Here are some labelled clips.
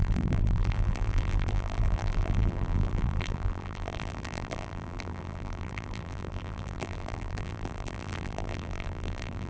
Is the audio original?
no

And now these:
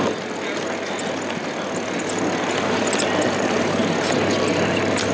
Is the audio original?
yes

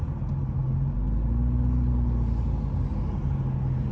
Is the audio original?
yes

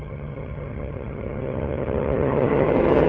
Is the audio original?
no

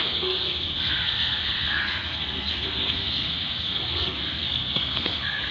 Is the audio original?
no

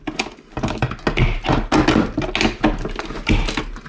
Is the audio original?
yes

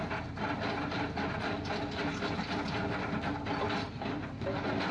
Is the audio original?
yes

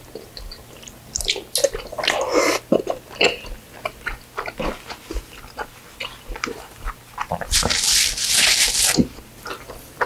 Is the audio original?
yes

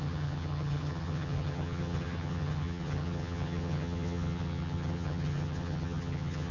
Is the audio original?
no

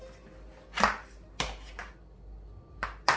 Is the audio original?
yes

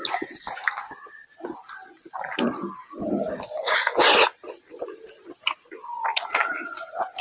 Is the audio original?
yes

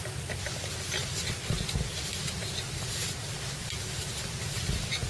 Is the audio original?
yes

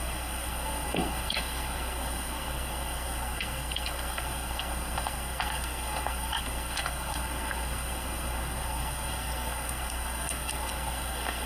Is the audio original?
no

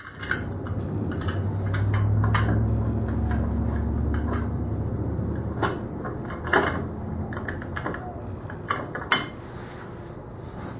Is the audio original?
yes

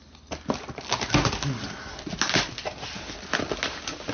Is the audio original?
yes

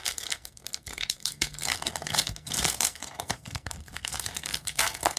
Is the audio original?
no